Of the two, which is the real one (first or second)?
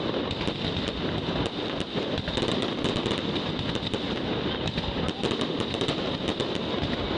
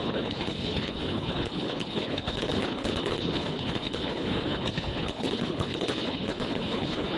first